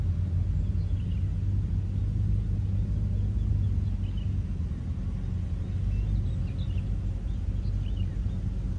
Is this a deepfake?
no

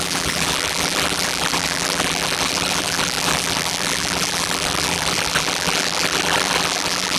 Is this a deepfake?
yes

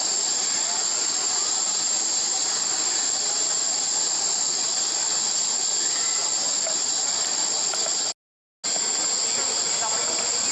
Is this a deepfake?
no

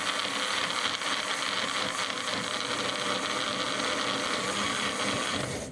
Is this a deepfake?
no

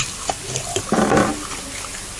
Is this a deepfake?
no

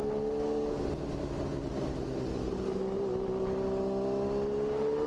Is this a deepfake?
no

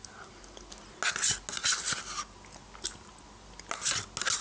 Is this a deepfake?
no